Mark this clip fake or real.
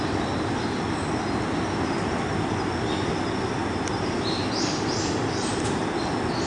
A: real